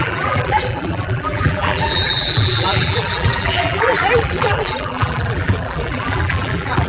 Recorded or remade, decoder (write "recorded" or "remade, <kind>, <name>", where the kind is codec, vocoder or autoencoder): remade, vocoder, BigVGAN v2